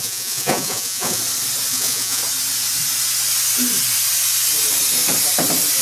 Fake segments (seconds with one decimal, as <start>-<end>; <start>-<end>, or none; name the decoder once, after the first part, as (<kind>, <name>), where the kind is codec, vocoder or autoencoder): 0.0-1.2 (vocoder, Vocos); 1.7-2.2